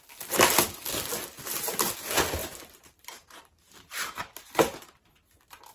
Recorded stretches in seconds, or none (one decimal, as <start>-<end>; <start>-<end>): 0.0-2.4; 5.0-5.7